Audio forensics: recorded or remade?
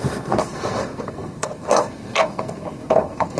remade